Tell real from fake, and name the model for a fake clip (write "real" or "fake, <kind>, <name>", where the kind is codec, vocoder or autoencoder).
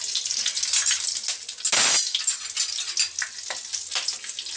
real